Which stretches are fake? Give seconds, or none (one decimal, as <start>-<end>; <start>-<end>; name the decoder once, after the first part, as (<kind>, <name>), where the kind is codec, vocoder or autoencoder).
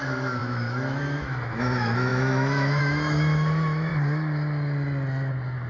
0.0-3.9 (autoencoder, DAC-VAE)